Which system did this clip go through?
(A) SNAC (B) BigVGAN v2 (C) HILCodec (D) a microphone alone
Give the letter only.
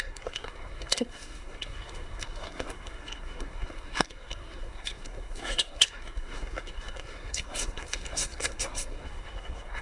A